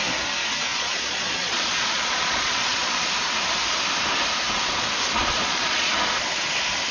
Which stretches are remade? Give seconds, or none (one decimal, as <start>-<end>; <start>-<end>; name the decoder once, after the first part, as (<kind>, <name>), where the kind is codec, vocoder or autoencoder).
0.7-3.1 (vocoder, Vocos); 5.2-5.9